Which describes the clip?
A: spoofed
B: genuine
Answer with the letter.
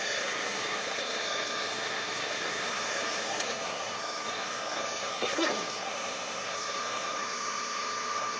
A